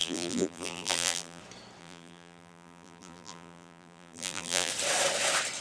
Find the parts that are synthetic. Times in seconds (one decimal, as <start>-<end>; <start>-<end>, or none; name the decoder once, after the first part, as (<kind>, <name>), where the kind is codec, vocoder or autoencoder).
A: 0.0-1.4 (vocoder, BigVGAN v2); 1.8-4.7